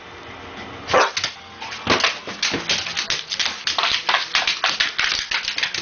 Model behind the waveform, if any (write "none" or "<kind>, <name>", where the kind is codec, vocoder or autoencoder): none